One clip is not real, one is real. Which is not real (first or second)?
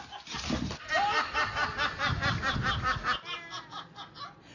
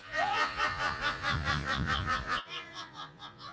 second